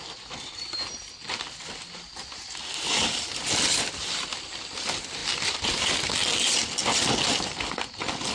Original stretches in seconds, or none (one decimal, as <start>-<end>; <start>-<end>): 0.0-8.3

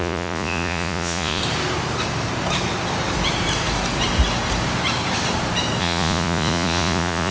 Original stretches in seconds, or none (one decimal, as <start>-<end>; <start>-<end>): 1.4-5.8